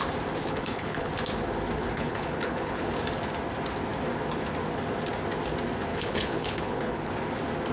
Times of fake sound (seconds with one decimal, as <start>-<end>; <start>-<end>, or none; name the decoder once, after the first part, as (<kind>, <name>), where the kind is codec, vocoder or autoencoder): 0.4-1.1 (codec, HILCodec); 1.8-2.8; 5.9-7.1